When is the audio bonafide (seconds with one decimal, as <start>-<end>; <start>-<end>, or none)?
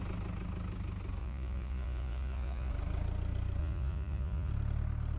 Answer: 0.0-1.2; 2.7-3.6; 4.5-5.2